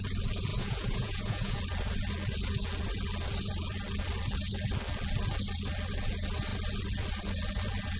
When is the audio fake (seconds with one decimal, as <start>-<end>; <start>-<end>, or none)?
0.5-1.6